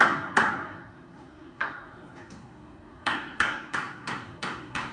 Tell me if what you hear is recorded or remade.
remade